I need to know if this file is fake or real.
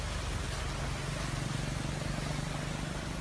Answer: real